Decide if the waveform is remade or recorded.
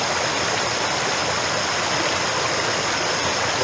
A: recorded